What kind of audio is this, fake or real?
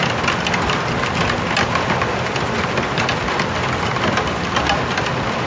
real